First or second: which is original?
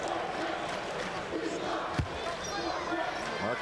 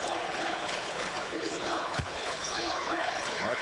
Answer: first